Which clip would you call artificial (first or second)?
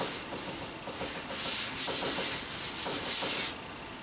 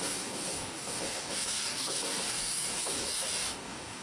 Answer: second